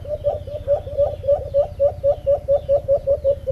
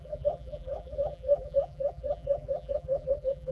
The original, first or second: first